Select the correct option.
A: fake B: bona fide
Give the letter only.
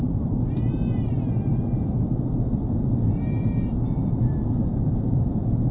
A